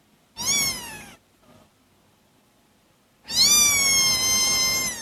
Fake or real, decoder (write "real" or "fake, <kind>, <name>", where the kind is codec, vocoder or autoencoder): real